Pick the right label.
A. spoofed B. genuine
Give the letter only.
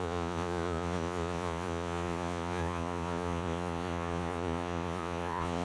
A